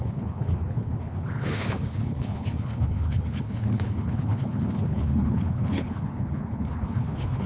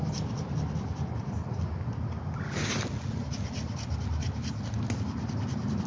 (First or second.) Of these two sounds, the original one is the second